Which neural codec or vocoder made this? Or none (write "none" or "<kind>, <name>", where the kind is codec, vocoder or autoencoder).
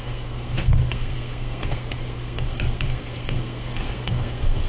codec, SNAC